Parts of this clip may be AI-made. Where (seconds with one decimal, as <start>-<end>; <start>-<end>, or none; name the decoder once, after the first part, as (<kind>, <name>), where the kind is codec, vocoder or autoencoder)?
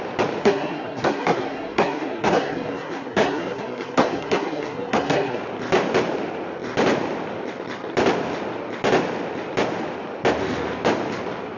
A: 0.4-5.4 (codec, SNAC)